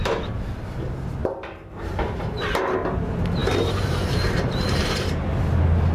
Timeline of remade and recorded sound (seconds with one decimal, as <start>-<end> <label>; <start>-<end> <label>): 0.0-1.2 recorded; 1.2-2.6 remade; 2.6-3.4 recorded; 3.4-5.4 remade; 5.4-5.9 recorded